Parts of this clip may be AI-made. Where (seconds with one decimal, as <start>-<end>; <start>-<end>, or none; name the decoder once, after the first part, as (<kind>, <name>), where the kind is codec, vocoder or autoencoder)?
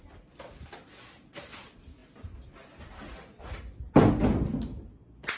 none